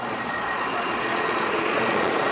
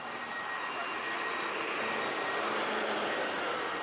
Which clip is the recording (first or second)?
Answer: second